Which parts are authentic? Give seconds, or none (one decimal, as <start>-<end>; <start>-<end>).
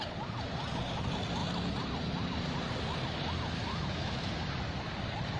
0.0-3.7; 4.3-5.4